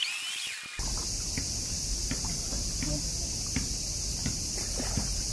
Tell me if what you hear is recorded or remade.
recorded